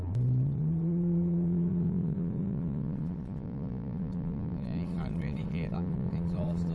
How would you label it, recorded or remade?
remade